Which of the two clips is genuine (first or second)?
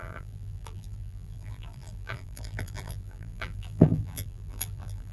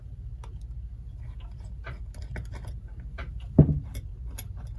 second